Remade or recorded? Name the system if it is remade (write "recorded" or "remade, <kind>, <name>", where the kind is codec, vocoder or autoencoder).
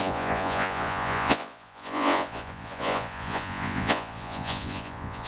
remade, vocoder, Vocos